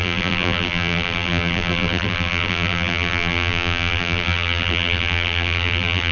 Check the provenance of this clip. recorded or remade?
remade